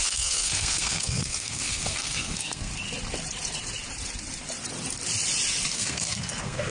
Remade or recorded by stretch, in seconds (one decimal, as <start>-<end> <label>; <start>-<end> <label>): 0.0-2.7 remade; 2.7-5.7 recorded; 5.7-6.7 remade